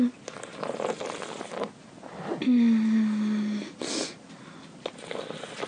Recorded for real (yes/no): yes